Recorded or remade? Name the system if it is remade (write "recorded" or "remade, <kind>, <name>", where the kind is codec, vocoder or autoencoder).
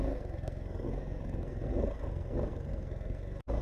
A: remade, codec, SNAC